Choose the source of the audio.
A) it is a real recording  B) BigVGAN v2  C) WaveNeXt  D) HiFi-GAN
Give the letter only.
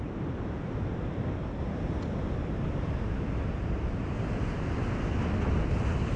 A